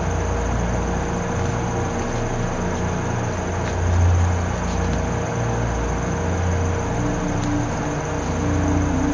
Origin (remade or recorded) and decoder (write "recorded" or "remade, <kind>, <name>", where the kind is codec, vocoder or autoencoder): recorded